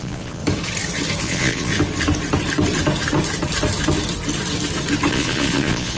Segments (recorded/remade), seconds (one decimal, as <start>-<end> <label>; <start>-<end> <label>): 0.0-0.4 remade; 0.4-1.2 recorded; 1.2-1.7 remade; 1.7-5.1 recorded; 5.1-6.0 remade

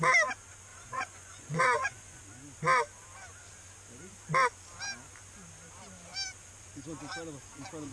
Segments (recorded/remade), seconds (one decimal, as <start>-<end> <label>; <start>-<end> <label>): 0.0-0.7 recorded; 0.7-2.2 remade; 2.2-7.9 recorded

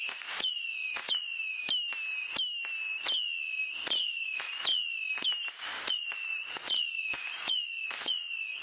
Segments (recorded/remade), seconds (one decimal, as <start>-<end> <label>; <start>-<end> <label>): 0.0-1.6 remade; 1.6-5.9 recorded; 5.9-8.6 remade

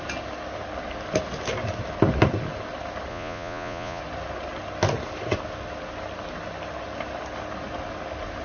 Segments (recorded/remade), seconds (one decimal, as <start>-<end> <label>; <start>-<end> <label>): 0.0-3.1 recorded; 3.1-4.0 remade; 4.0-8.4 recorded